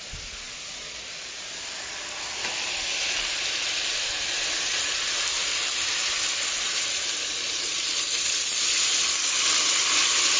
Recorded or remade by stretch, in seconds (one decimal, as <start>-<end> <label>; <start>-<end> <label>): 0.0-10.4 remade